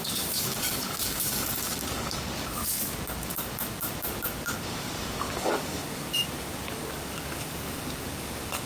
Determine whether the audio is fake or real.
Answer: fake